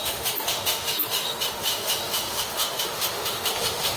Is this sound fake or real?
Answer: fake